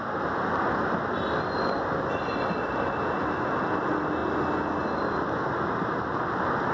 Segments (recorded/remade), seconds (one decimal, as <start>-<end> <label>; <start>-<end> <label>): 0.0-6.7 recorded